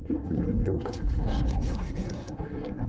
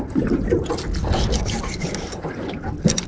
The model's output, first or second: first